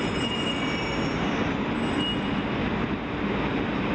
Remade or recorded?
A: recorded